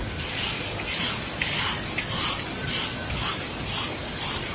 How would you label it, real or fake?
real